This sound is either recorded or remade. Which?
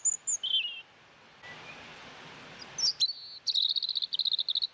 recorded